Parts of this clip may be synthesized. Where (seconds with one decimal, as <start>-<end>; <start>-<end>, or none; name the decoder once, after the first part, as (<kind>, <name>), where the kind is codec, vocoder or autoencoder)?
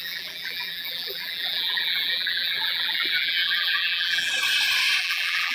0.0-4.3 (vocoder, BigVGAN v2); 5.0-5.5